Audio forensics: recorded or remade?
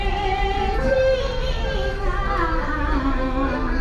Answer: recorded